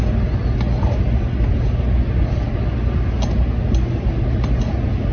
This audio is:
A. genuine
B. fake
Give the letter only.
A